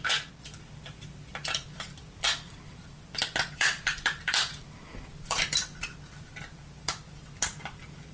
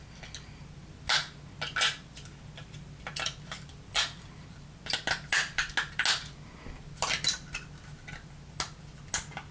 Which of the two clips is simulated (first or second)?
first